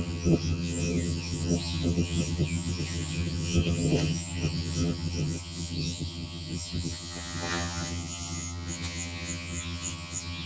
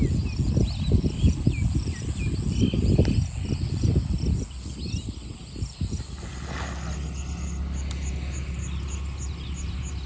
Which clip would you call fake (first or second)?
first